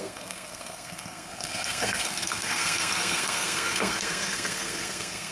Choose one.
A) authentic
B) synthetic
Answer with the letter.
B